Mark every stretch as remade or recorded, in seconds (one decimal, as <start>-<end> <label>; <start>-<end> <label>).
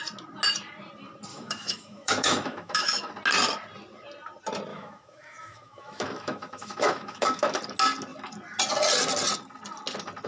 0.0-1.3 recorded; 1.3-3.1 remade; 3.1-4.7 recorded; 4.7-7.6 remade; 7.6-10.3 recorded